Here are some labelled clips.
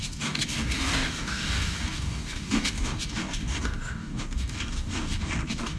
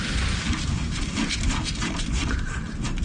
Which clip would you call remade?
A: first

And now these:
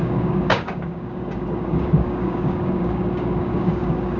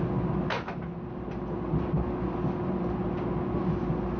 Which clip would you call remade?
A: first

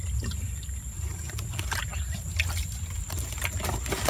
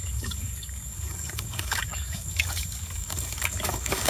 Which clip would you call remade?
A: second